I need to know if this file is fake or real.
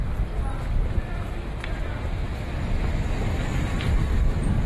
real